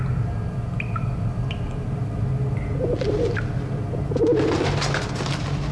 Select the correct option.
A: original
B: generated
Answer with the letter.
A